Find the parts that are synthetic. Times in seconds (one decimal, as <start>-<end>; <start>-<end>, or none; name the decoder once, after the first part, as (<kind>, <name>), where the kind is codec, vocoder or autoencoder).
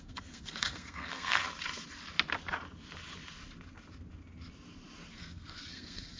0.0-1.4 (codec, SNAC); 5.1-6.2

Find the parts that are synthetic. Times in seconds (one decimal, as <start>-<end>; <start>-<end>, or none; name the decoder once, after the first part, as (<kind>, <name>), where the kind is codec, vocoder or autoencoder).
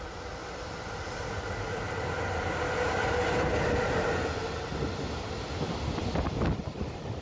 0.4-2.2 (vocoder, BigVGAN v2); 4.7-6.6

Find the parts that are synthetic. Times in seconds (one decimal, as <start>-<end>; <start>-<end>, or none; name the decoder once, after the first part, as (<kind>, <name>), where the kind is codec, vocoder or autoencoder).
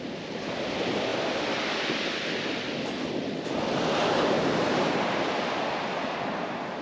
none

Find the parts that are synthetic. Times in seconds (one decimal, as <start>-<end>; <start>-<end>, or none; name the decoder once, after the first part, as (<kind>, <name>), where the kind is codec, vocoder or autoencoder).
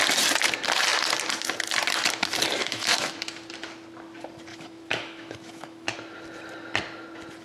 2.6-3.1 (autoencoder, DAC-VAE); 4.5-5.9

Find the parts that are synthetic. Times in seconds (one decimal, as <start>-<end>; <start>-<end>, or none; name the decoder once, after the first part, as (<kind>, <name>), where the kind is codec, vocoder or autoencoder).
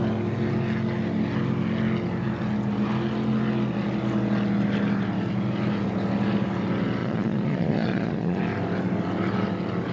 7.0-8.4 (vocoder, Vocos)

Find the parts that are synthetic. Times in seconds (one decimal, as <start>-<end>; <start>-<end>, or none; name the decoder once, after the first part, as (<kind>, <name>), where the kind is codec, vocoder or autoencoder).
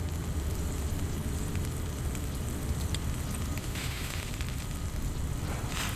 3.6-4.3 (autoencoder, DAC-VAE)